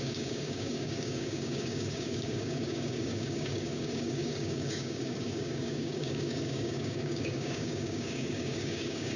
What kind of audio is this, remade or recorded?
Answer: remade